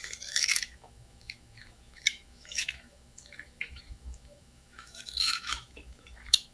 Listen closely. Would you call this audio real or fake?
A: fake